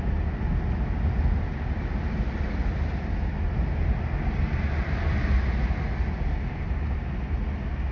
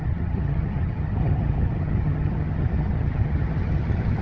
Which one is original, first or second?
first